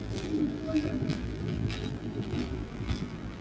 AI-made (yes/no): yes